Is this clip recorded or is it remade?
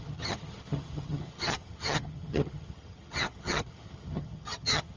remade